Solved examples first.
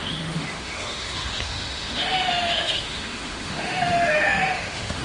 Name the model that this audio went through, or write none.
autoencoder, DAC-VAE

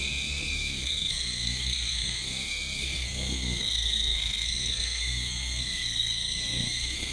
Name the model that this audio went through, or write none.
codec, SNAC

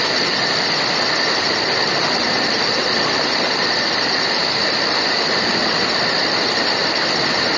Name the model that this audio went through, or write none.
none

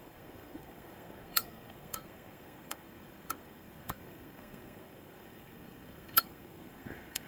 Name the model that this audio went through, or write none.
codec, SNAC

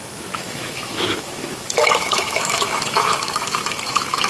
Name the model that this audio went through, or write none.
autoencoder, DAC-VAE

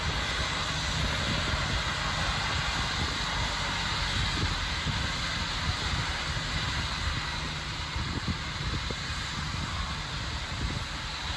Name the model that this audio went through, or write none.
none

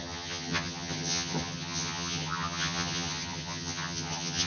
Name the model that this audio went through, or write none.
vocoder, HiFi-GAN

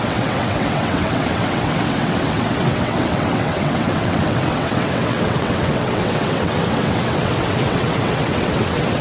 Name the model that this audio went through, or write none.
vocoder, WaveNeXt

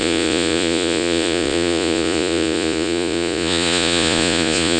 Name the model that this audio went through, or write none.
vocoder, Vocos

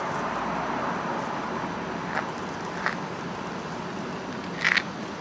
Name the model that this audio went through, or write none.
none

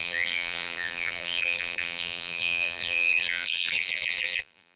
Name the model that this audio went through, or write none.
vocoder, BigVGAN v2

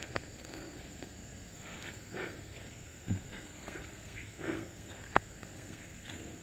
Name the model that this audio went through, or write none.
codec, SNAC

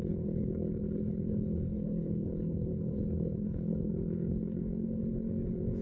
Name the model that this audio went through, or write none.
codec, HILCodec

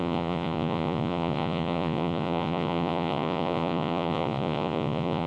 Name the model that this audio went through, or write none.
vocoder, Vocos